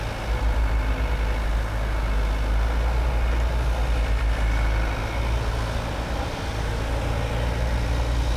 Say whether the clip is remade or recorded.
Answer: recorded